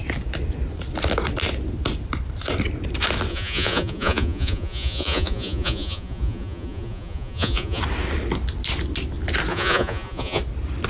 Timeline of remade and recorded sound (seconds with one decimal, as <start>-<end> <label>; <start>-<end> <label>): 0.0-3.3 recorded; 3.3-7.8 remade; 7.8-9.5 recorded; 9.5-10.4 remade; 10.4-10.9 recorded